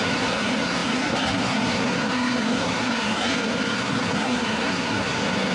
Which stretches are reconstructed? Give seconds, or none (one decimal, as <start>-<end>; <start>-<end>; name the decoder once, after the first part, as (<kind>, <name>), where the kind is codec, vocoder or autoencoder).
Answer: 0.0-5.5 (codec, SNAC)